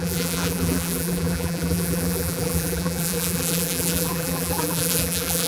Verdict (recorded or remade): remade